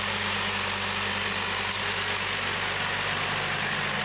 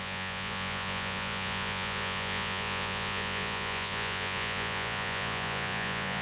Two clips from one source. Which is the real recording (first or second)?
first